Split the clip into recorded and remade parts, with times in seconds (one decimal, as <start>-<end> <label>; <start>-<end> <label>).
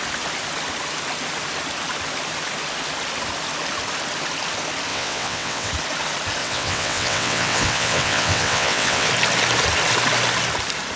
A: 0.0-4.9 recorded; 4.9-5.7 remade; 5.7-6.4 recorded; 6.4-9.1 remade; 9.1-11.0 recorded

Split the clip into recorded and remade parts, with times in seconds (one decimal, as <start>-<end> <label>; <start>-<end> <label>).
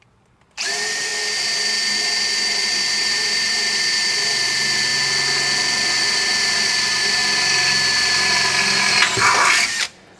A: 0.0-1.1 remade; 1.1-3.1 recorded; 3.1-4.9 remade; 4.9-6.1 recorded; 6.1-7.2 remade; 7.2-9.7 recorded; 9.7-10.2 remade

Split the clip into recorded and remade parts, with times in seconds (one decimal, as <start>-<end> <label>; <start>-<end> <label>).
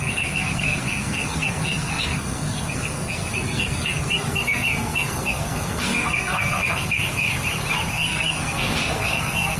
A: 0.0-7.3 remade; 7.3-7.9 recorded; 7.9-9.6 remade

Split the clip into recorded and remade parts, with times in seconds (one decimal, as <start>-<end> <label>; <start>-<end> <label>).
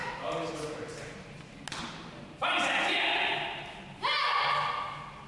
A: 0.0-5.3 recorded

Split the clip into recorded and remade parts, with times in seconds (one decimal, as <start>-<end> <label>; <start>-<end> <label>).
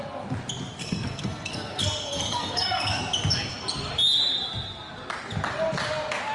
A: 0.0-0.8 recorded; 0.8-3.0 remade; 3.0-6.3 recorded